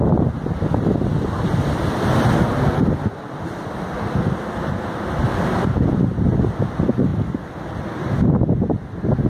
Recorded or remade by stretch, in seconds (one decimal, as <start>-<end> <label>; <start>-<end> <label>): 0.0-9.3 recorded